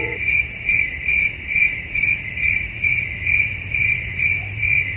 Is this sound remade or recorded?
remade